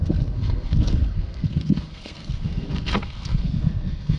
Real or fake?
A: fake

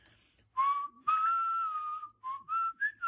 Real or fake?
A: real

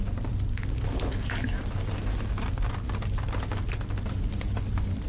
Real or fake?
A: real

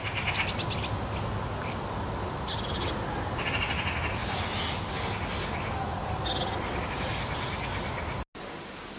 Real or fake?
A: real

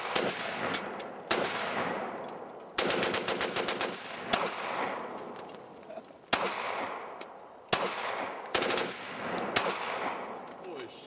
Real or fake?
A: real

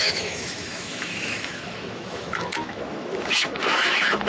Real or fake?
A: fake